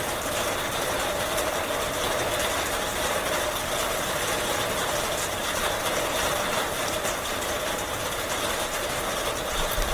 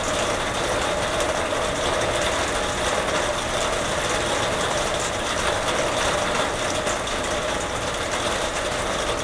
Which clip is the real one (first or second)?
second